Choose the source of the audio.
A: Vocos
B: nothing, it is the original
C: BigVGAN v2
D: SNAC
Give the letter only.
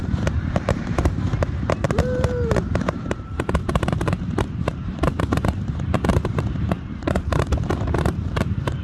C